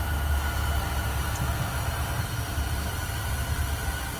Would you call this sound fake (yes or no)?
no